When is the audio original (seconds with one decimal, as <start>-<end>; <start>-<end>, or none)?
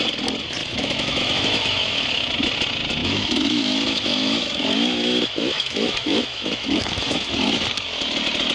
0.0-0.6; 2.3-3.0; 7.3-8.5